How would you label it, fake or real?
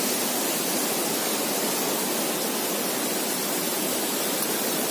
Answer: real